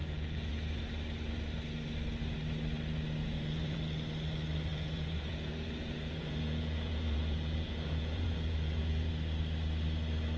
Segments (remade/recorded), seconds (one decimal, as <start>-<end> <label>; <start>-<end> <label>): 0.0-0.5 remade; 0.5-3.2 recorded; 3.2-3.8 remade; 3.8-4.7 recorded; 4.7-9.1 remade; 9.1-10.4 recorded